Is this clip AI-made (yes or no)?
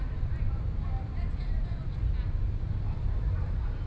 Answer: no